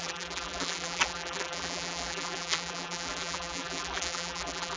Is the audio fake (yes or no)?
yes